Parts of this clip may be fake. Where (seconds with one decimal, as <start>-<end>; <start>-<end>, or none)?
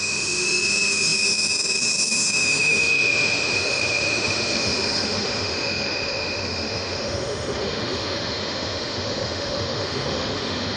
0.0-10.8